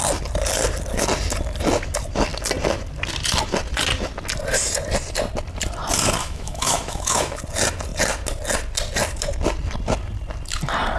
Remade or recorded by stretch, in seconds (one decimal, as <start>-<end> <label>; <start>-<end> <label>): 0.0-6.2 recorded; 6.2-7.4 remade; 7.4-11.0 recorded